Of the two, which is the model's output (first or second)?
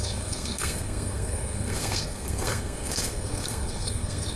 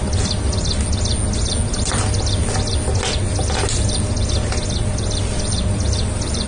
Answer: first